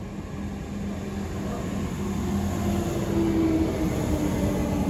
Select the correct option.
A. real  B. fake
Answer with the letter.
A